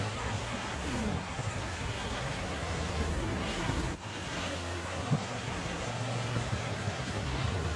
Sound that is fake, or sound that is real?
fake